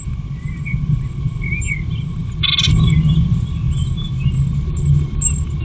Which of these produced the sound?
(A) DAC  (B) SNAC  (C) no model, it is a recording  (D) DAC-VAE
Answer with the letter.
C